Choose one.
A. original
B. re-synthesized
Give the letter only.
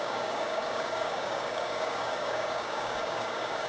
B